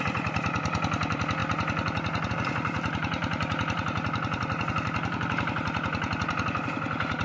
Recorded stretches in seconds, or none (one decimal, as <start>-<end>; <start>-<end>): 1.4-2.3